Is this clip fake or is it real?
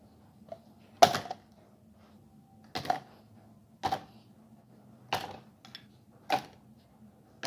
real